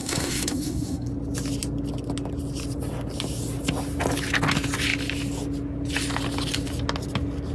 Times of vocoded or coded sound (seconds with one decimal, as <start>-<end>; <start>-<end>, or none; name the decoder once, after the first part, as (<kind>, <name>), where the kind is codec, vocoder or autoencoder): 0.0-1.1 (codec, SNAC)